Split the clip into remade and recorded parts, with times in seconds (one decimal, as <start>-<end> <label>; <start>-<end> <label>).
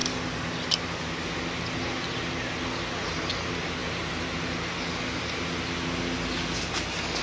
0.0-7.2 recorded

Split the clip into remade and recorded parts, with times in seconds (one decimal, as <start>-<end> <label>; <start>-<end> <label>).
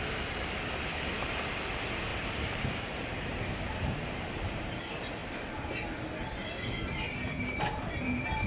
0.0-2.1 recorded; 2.1-4.6 remade; 4.6-7.2 recorded; 7.2-8.5 remade